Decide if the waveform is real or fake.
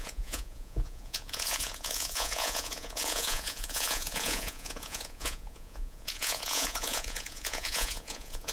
fake